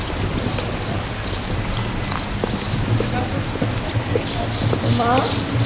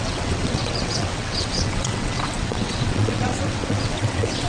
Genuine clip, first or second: first